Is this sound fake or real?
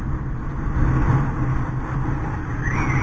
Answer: real